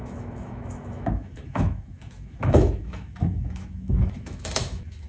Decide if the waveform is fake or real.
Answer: fake